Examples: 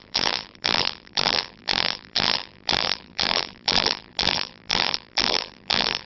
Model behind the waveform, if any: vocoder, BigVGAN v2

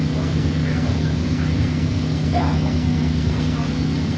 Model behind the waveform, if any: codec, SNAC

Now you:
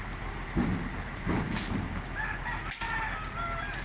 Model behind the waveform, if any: none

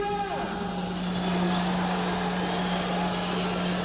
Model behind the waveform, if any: none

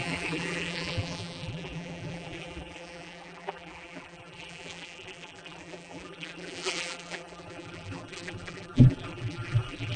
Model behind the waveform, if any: vocoder, BigVGAN v2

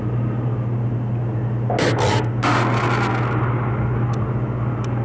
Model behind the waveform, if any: none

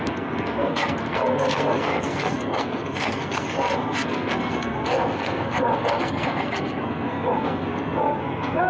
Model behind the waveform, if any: codec, SNAC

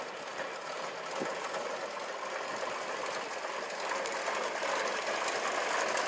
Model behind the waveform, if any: none